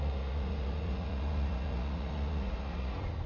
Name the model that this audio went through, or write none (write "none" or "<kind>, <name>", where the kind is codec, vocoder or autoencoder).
vocoder, Vocos